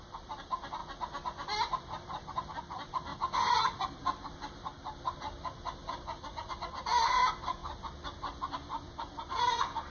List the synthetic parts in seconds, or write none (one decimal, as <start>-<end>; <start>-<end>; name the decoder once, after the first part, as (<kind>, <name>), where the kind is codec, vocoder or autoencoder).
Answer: 0.0-0.8 (vocoder, BigVGAN v2); 1.6-7.6; 8.2-9.9